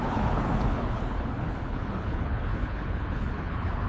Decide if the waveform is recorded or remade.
remade